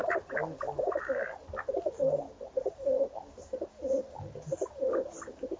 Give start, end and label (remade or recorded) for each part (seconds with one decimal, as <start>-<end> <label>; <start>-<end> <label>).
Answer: 0.0-5.6 recorded